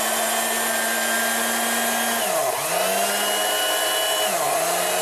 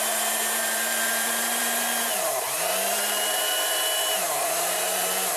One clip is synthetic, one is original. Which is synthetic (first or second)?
second